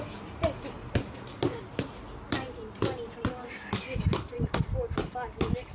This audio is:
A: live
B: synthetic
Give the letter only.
A